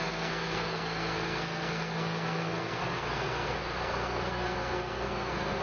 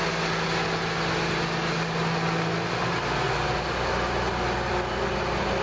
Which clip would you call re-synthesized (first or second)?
first